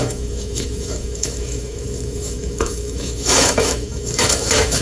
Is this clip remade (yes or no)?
yes